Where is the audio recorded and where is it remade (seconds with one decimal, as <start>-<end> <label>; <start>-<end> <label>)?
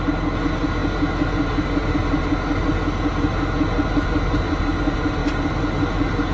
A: 0.0-6.3 recorded